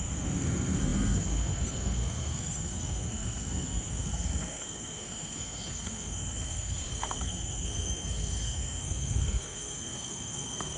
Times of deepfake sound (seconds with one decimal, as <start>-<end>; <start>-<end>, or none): 0.0-10.8